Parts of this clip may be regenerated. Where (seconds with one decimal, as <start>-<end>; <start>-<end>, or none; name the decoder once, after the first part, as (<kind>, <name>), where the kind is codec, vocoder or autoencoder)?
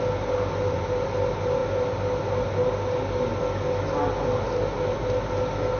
none